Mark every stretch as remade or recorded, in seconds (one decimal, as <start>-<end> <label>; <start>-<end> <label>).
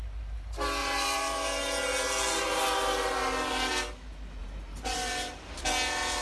0.0-0.8 recorded; 0.8-3.7 remade; 3.7-4.4 recorded; 4.4-5.7 remade; 5.7-6.2 recorded